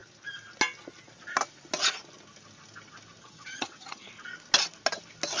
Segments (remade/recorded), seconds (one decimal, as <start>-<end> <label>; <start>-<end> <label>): 0.0-3.2 recorded; 3.2-4.1 remade; 4.1-5.4 recorded